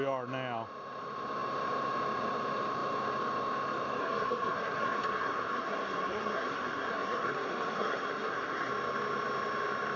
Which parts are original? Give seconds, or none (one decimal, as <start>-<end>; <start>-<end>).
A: 0.0-4.0; 8.7-10.0